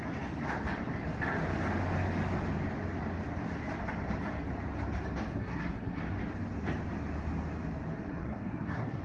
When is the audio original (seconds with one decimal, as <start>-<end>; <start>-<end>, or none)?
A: 0.0-5.3; 6.0-8.1